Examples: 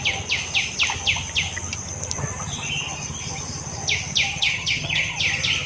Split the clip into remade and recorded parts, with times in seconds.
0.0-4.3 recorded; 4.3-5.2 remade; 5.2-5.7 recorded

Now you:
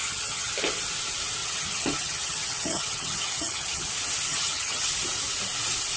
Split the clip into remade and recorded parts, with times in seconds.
0.0-0.5 remade; 0.5-1.4 recorded; 1.4-3.9 remade; 3.9-4.3 recorded; 4.3-4.9 remade; 4.9-6.0 recorded

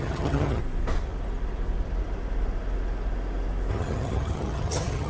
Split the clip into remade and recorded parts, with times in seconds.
0.0-0.6 remade; 0.6-3.7 recorded; 3.7-5.1 remade

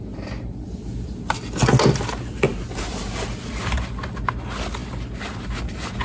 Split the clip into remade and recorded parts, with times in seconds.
0.0-6.0 recorded

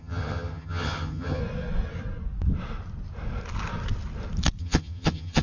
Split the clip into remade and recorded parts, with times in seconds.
0.0-1.4 remade; 1.4-4.6 recorded; 4.6-5.4 remade

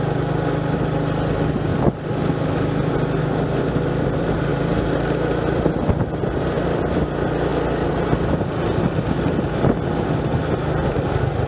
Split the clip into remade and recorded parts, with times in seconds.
0.0-11.5 recorded

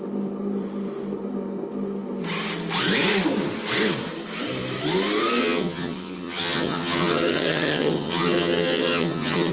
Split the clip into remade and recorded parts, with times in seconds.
0.0-5.4 recorded; 5.4-9.5 remade